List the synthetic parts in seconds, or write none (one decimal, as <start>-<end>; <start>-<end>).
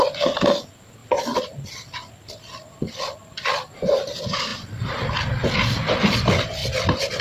6.6-7.2